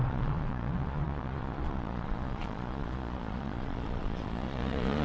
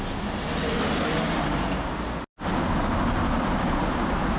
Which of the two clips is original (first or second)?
second